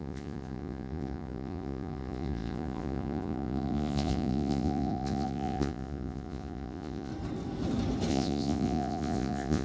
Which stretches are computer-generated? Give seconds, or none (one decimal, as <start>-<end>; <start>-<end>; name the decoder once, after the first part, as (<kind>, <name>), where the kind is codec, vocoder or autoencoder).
0.0-7.1 (vocoder, Vocos); 8.1-9.6